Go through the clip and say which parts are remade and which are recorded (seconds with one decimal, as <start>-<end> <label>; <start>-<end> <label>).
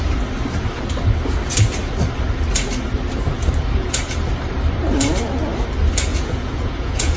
0.0-6.1 recorded; 6.1-7.2 remade